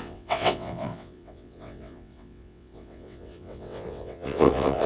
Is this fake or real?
fake